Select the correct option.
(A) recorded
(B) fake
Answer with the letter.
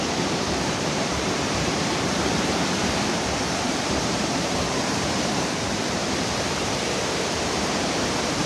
B